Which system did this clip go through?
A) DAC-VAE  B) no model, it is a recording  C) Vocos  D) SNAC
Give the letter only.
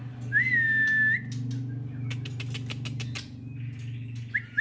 B